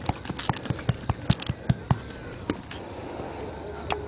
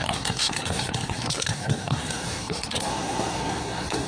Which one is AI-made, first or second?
second